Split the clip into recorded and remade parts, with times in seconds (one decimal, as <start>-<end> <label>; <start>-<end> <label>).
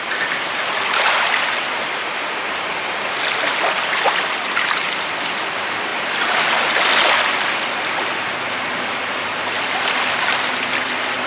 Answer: 0.0-11.3 recorded